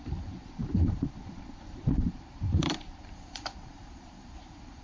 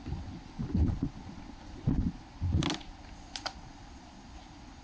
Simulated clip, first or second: first